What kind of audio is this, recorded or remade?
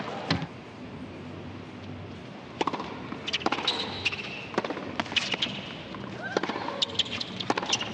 recorded